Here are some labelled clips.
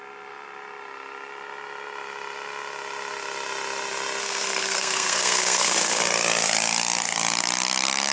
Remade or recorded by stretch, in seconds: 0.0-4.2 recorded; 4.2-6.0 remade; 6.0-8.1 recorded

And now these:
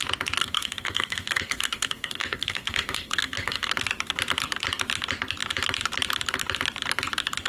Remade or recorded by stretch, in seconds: 0.0-0.4 recorded; 0.4-3.7 remade; 3.7-7.5 recorded

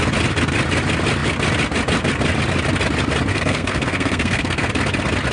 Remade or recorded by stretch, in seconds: 0.0-3.3 recorded; 3.3-4.7 remade; 4.7-5.3 recorded